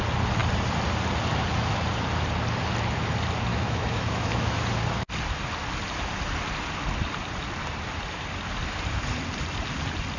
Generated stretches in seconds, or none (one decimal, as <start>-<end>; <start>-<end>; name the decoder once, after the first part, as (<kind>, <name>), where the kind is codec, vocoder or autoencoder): 3.5-4.6 (autoencoder, DAC-VAE)